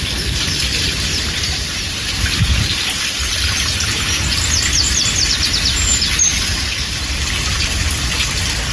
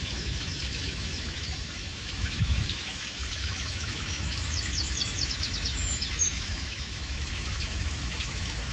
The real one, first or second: first